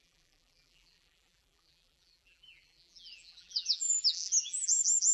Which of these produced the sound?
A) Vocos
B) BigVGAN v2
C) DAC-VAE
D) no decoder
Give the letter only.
B